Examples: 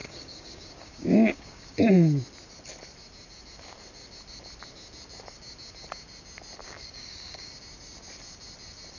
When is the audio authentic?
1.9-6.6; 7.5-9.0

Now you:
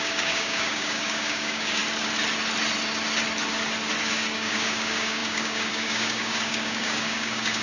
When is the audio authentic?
1.8-4.0